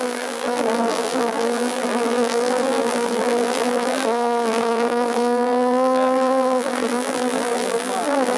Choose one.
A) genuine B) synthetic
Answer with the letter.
B